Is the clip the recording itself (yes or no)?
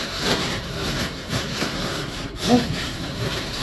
no